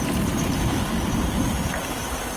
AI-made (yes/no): no